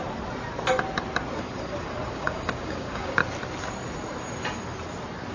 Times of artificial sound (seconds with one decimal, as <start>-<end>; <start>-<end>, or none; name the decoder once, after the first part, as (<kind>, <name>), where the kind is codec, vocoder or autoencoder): 2.1-3.2 (codec, DAC)